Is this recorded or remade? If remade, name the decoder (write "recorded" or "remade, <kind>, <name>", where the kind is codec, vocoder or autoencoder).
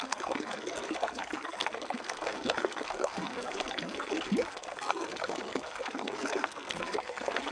remade, codec, SNAC